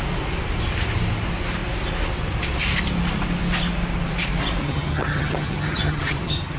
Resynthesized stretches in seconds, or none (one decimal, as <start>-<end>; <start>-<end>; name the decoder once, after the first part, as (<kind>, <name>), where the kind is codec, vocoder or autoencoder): 4.6-6.6 (vocoder, HiFi-GAN)

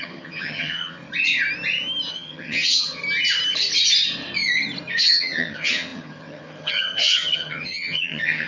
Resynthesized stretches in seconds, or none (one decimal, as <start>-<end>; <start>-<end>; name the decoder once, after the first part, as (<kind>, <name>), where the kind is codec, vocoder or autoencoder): 0.0-1.0 (vocoder, HiFi-GAN); 2.1-3.0; 5.0-8.5

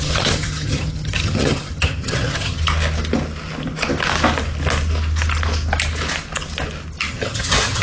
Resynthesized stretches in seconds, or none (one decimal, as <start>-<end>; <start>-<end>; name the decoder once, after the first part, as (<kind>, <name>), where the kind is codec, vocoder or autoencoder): 0.0-2.6 (vocoder, HiFi-GAN); 7.1-7.8

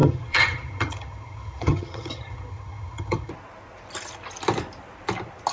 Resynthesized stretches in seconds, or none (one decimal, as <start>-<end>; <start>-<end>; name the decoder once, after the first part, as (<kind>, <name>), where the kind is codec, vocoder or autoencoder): 0.0-3.3 (vocoder, HiFi-GAN)

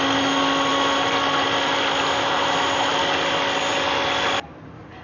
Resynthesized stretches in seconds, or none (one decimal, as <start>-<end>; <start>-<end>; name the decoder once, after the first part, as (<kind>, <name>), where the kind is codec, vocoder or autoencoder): none

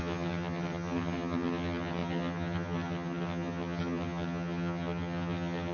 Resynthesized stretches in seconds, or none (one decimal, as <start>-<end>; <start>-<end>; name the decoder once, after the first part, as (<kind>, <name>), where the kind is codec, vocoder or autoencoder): 0.0-5.7 (vocoder, HiFi-GAN)

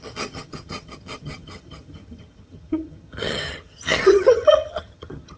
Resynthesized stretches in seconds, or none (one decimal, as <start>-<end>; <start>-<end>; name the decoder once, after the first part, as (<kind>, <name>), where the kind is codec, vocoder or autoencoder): 0.0-5.4 (vocoder, HiFi-GAN)

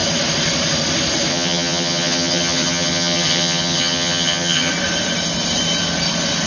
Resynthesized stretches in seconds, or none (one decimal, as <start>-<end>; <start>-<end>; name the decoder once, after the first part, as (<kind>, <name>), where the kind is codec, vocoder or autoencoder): 1.3-4.7 (vocoder, HiFi-GAN)